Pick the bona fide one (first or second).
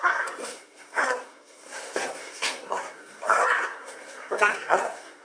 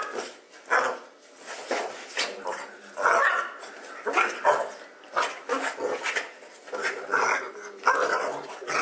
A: second